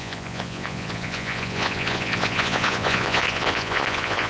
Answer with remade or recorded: remade